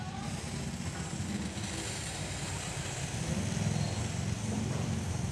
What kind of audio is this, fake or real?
fake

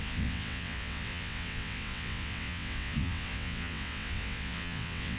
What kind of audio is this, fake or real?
fake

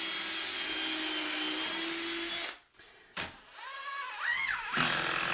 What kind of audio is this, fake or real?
real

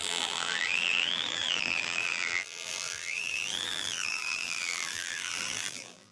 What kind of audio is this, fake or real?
fake